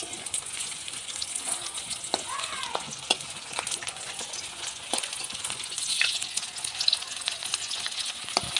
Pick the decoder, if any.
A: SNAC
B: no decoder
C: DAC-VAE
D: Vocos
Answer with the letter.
D